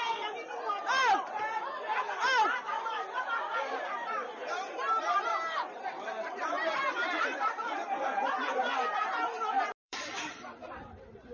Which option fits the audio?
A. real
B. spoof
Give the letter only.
B